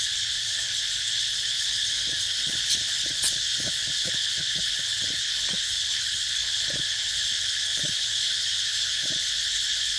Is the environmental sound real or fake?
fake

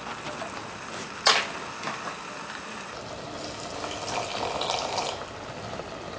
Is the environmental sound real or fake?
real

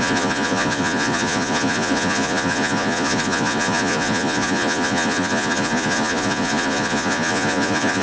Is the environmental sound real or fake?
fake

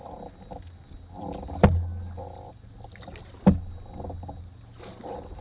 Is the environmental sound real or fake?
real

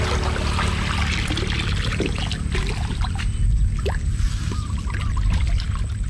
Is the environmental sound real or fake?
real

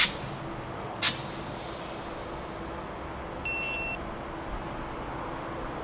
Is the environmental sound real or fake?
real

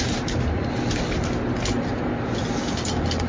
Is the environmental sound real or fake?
real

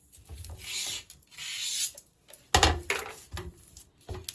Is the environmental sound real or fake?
real